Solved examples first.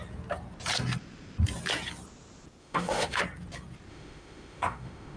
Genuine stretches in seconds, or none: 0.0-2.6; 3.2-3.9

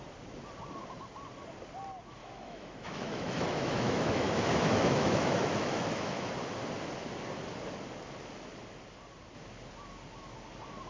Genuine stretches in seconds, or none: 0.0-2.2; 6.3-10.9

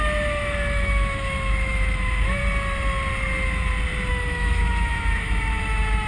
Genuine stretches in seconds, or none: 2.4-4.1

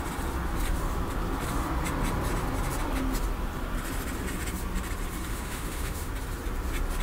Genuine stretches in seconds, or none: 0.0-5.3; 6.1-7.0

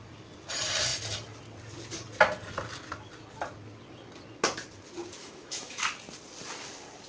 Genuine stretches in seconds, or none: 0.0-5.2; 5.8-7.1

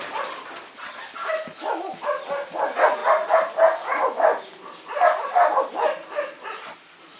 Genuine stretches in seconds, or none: 0.0-1.2; 2.1-7.2

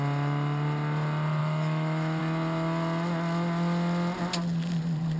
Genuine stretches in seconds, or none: 0.0-1.4; 2.2-5.2

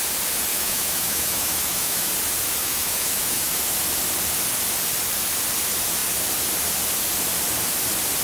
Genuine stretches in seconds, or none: 0.0-0.5; 2.1-2.6; 3.6-8.2